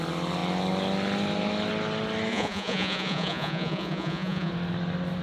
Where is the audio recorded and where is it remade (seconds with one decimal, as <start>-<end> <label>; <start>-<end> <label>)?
0.0-2.3 recorded; 2.3-4.5 remade; 4.5-5.2 recorded